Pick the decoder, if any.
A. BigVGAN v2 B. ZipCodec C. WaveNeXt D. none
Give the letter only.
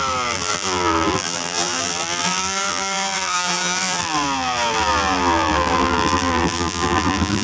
A